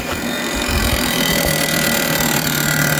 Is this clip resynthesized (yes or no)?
yes